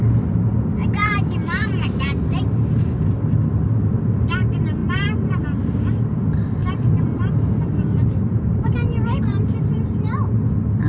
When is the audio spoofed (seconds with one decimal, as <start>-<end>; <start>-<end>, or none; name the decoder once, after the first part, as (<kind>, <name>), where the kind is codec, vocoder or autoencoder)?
1.0-2.2 (vocoder, BigVGAN v2); 4.8-5.4; 6.6-8.9; 9.3-9.9